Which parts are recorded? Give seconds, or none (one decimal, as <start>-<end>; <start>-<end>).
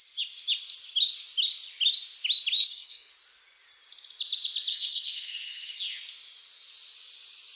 0.0-2.6; 3.1-4.7; 5.8-7.6